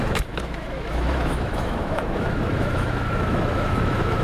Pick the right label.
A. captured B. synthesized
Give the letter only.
B